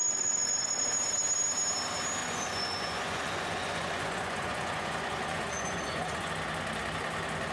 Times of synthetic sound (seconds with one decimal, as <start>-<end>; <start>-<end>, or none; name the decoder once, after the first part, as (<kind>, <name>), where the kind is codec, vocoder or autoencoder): 0.0-0.7 (vocoder, Vocos); 2.2-6.3